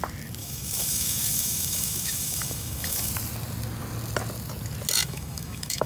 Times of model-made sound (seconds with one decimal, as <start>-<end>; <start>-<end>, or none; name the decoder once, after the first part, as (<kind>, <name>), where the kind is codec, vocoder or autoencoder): 0.4-3.1 (autoencoder, DAC-VAE); 5.0-5.9